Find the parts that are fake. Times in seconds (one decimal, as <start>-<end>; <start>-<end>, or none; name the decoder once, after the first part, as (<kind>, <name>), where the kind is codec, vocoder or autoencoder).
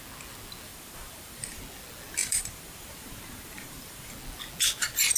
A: 0.7-1.6 (vocoder, BigVGAN v2); 2.2-4.1